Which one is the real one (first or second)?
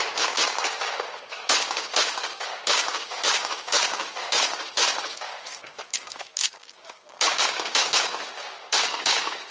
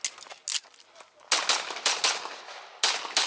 second